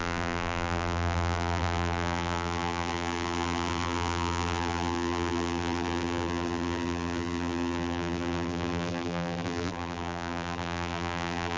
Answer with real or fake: fake